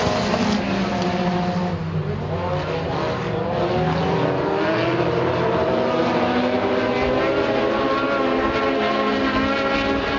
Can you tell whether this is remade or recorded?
recorded